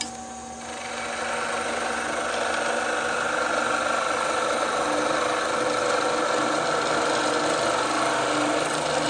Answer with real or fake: real